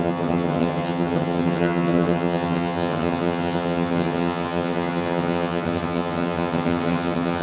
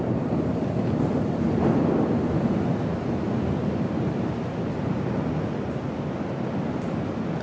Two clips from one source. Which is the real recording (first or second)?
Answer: second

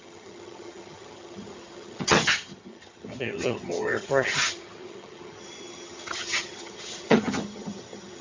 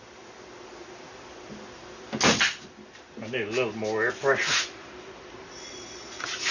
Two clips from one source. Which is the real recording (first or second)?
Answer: second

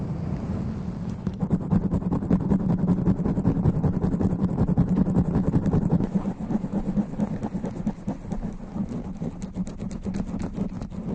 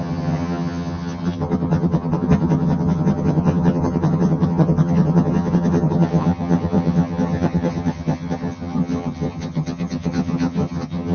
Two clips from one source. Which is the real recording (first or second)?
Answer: first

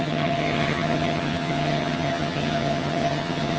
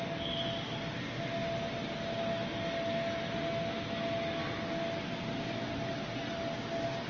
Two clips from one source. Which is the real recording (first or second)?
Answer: second